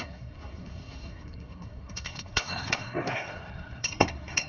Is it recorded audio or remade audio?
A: remade